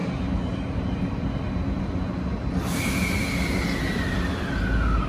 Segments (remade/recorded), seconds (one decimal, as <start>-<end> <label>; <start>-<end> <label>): 0.0-5.1 recorded